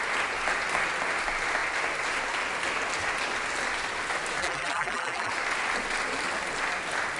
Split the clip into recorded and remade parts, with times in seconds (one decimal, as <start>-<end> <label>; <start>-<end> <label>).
0.0-4.4 recorded; 4.4-5.3 remade; 5.3-7.2 recorded